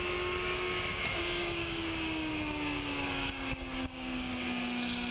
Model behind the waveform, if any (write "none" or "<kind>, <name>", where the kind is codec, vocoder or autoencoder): codec, DAC